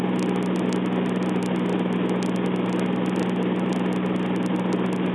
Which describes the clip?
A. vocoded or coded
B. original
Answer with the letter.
B